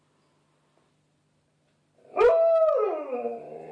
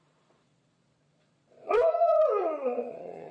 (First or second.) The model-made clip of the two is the second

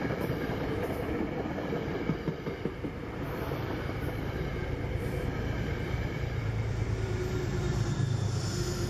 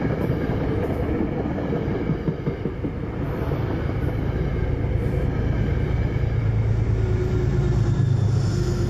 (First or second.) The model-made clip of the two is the first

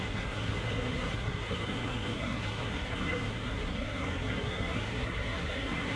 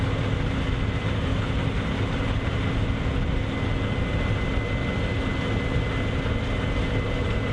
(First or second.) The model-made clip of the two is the first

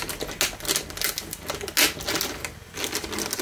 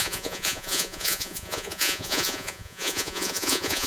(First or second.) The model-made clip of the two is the second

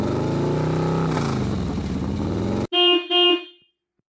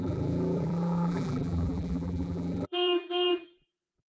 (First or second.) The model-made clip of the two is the second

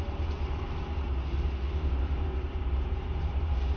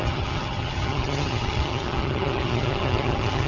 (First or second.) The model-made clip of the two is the second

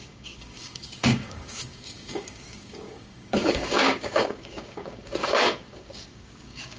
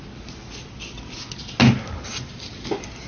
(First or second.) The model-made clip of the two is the first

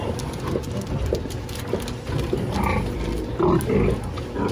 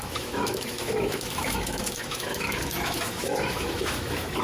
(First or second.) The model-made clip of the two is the second